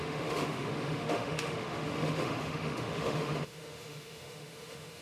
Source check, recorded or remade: remade